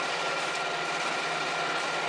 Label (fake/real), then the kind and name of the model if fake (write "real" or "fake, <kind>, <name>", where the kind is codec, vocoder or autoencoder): real